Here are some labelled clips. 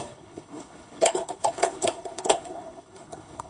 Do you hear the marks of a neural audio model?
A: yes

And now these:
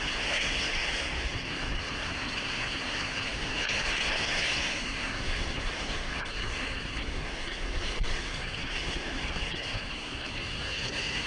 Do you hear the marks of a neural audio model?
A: yes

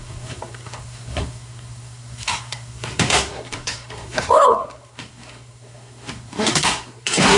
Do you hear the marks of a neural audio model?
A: yes